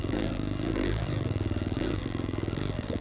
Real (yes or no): no